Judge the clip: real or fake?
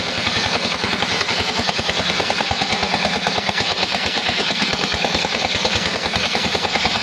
fake